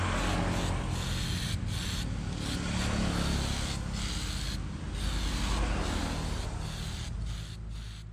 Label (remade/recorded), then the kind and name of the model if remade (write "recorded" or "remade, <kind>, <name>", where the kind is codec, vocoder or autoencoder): recorded